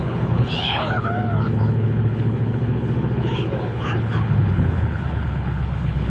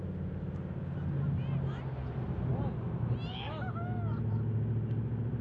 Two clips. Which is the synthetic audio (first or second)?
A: first